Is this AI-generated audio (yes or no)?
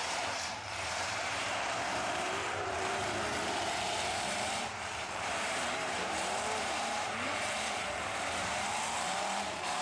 yes